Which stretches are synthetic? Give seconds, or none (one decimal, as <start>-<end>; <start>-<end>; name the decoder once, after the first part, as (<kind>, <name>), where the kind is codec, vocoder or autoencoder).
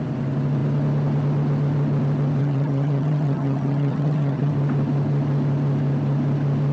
2.4-4.5 (vocoder, HiFi-GAN)